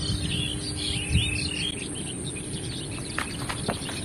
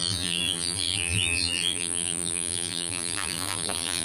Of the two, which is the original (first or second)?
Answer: first